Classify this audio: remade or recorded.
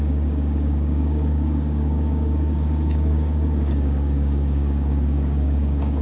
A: remade